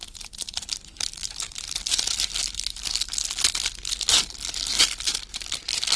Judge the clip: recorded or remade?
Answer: recorded